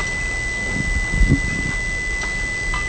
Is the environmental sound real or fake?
real